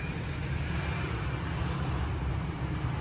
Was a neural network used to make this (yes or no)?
no